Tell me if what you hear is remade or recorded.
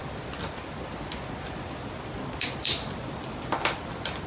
remade